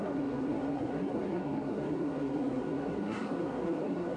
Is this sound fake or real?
fake